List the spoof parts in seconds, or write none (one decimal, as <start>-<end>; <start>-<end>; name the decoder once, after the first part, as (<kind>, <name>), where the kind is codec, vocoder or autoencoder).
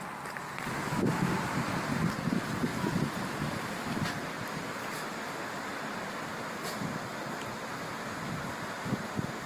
2.7-6.5 (vocoder, BigVGAN v2)